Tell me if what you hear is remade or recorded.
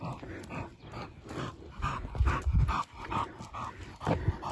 remade